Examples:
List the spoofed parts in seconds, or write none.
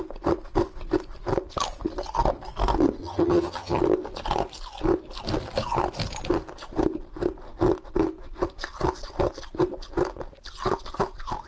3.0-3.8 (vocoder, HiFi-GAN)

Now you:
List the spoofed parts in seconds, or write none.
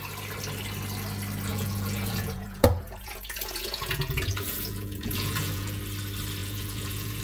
1.5-5.8 (vocoder, Vocos); 6.4-7.2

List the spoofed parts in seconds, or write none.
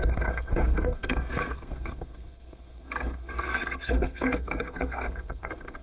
0.0-5.8 (codec, SNAC)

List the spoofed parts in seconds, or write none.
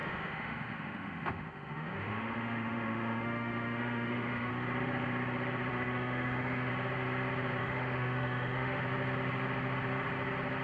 0.0-4.5 (autoencoder, DAC-VAE); 5.7-6.7; 7.6-8.8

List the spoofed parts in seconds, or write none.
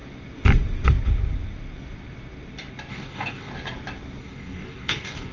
2.9-3.5 (codec, DAC); 4.2-5.3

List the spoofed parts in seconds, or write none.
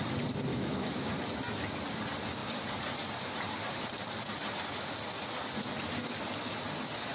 0.5-1.1 (autoencoder, DAC-VAE)